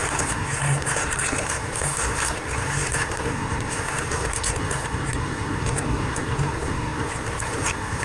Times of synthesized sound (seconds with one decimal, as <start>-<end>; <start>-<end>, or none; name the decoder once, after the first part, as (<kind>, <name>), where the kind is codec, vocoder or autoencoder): 0.0-8.0 (codec, SNAC)